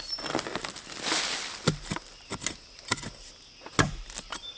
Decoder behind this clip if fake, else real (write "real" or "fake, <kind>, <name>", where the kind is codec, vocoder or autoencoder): real